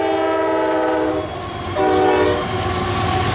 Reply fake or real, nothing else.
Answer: real